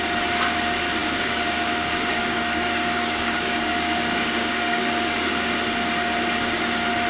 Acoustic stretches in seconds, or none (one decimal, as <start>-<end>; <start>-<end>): 0.0-1.0; 5.3-7.1